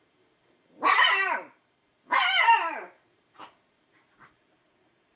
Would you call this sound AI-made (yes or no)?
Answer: yes